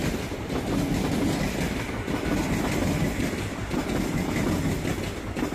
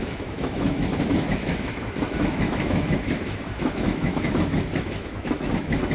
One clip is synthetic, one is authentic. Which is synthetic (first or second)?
second